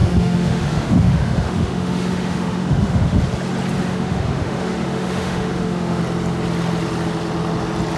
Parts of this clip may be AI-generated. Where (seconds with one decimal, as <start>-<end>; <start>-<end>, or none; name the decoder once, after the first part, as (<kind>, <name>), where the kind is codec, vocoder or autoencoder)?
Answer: 0.0-3.2 (autoencoder, DAC-VAE); 3.8-6.0